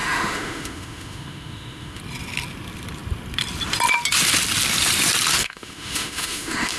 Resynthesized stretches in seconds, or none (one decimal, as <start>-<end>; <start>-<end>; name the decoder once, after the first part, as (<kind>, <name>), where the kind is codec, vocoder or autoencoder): 0.0-2.0 (autoencoder, DAC-VAE); 5.4-6.8